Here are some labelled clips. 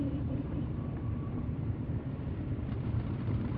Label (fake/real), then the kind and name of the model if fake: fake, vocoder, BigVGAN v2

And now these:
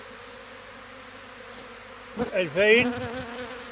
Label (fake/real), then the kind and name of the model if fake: real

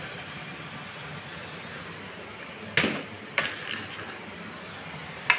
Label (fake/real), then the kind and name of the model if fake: real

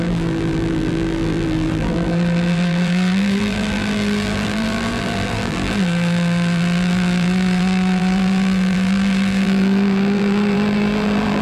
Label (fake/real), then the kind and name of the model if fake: fake, vocoder, BigVGAN v2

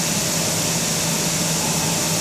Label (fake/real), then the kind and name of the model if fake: real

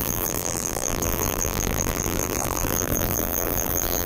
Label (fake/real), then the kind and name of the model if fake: fake, vocoder, BigVGAN v2